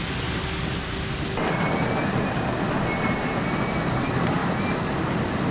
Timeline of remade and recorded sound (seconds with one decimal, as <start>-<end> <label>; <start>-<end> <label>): 0.0-5.5 recorded